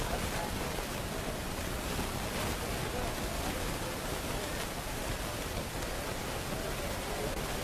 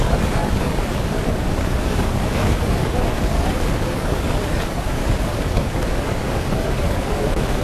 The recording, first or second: first